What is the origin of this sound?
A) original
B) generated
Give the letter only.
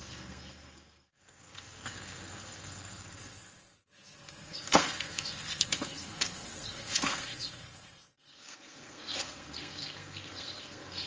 B